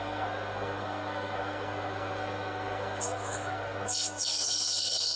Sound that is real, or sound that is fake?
fake